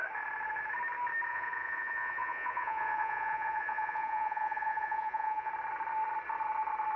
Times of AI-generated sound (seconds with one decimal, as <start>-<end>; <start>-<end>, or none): 1.3-5.5